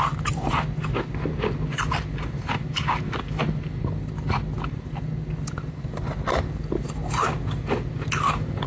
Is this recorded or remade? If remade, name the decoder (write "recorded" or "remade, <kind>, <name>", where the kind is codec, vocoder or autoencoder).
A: recorded